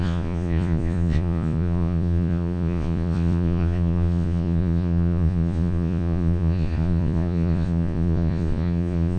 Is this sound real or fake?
fake